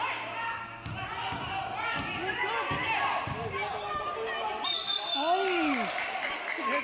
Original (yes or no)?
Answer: yes